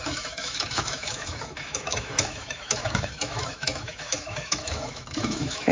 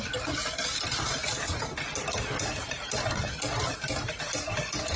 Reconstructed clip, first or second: first